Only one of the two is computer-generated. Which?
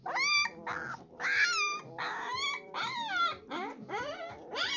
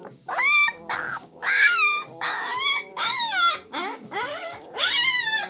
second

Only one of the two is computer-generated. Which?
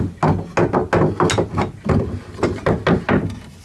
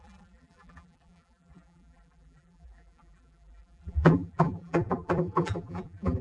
second